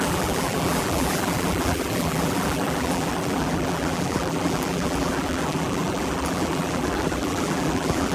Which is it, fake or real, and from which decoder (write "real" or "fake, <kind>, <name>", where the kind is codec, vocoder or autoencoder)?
fake, vocoder, BigVGAN v2